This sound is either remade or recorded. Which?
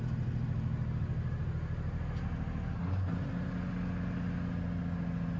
recorded